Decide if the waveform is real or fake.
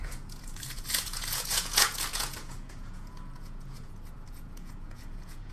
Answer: fake